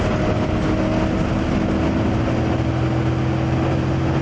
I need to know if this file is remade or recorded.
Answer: recorded